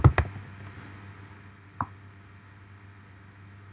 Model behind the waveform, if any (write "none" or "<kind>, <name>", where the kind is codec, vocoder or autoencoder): none